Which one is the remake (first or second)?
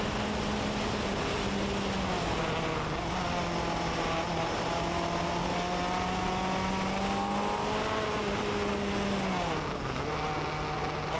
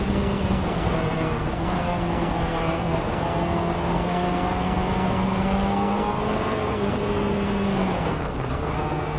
second